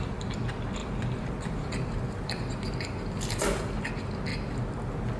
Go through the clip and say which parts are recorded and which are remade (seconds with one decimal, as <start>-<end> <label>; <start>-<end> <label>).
0.0-0.8 recorded; 0.8-3.9 remade; 3.9-5.2 recorded